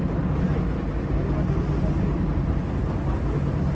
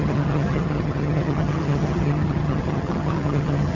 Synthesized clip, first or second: second